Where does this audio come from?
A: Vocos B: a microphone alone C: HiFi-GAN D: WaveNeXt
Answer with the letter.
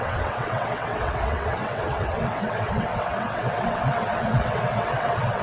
D